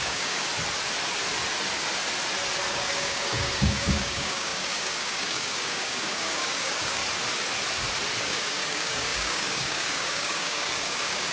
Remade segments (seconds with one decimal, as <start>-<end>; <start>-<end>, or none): 0.0-0.5; 2.7-7.0; 8.2-11.3